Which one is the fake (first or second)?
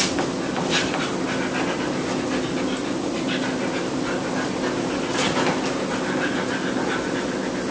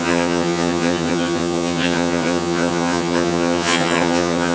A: second